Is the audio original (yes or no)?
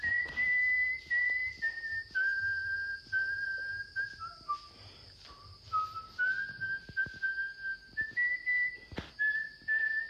yes